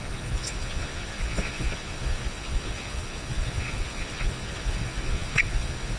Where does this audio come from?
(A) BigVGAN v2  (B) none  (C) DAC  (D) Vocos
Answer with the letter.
D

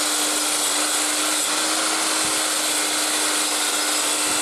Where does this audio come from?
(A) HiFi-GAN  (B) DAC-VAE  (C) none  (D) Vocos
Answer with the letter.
C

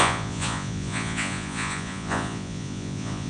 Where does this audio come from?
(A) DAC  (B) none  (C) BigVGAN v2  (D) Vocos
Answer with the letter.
D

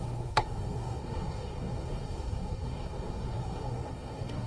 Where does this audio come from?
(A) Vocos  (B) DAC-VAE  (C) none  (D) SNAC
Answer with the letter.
D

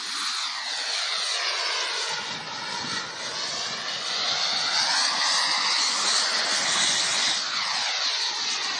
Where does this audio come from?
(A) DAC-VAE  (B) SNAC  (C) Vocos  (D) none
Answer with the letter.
C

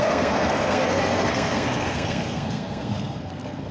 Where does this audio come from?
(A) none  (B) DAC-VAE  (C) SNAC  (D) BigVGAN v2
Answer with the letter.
C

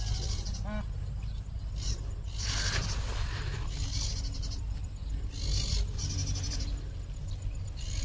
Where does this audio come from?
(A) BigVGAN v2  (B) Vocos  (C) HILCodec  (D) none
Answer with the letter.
D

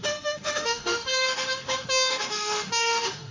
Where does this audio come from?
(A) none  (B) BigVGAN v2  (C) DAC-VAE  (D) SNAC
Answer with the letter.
C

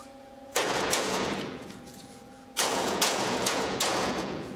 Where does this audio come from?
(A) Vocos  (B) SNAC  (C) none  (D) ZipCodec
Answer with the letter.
A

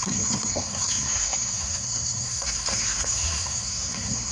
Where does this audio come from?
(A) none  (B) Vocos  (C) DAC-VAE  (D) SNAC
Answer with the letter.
D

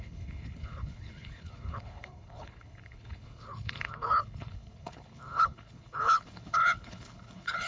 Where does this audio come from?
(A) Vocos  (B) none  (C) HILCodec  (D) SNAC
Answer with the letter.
C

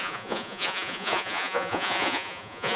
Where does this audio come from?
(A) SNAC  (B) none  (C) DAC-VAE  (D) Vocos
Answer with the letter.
D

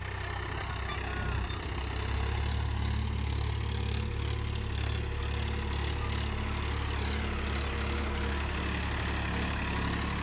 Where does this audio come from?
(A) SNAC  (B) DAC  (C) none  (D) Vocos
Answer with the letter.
C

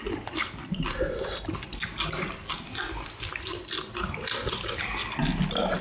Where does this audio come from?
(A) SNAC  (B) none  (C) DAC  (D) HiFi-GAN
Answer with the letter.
B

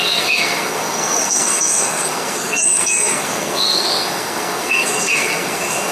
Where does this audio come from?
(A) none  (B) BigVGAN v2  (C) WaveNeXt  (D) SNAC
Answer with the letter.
D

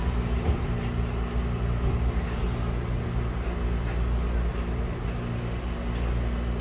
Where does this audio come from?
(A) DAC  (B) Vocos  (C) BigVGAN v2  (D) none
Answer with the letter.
D